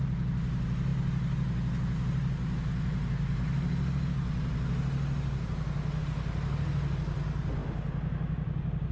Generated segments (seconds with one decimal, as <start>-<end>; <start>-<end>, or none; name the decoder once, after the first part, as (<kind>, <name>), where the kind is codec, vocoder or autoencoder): none